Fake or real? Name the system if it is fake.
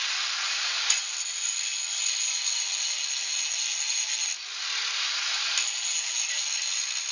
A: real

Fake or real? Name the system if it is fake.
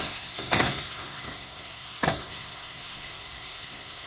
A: fake, codec, SNAC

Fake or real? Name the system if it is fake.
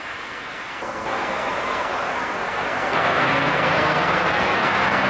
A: fake, codec, SNAC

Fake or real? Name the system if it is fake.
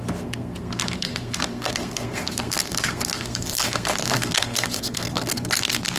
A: fake, codec, SNAC